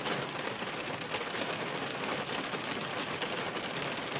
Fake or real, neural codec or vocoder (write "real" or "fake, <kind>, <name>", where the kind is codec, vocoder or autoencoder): real